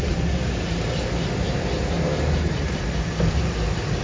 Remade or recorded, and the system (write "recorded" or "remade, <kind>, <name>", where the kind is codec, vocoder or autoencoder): recorded